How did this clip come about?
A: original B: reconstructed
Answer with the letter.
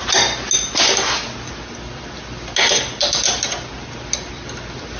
A